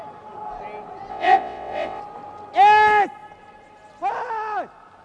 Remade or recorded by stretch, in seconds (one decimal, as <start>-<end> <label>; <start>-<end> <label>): 0.0-1.1 recorded; 1.1-2.0 remade; 2.0-5.0 recorded